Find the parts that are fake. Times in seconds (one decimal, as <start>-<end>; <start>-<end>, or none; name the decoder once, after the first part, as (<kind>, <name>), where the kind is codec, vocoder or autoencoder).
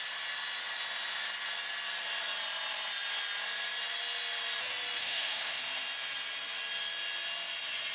5.0-5.6 (autoencoder, DAC-VAE)